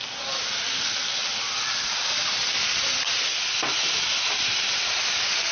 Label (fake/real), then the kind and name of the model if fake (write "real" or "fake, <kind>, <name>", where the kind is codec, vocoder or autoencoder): real